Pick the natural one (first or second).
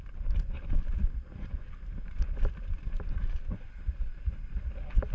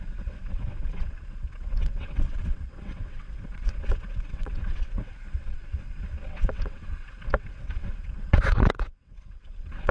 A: first